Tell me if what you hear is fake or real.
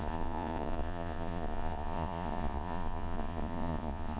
fake